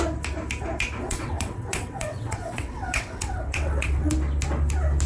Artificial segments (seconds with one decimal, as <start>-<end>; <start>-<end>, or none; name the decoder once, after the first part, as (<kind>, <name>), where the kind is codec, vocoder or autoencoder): 1.0-4.1 (vocoder, WaveNeXt)